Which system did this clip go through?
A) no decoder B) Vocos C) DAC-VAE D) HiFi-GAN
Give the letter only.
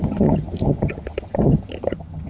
D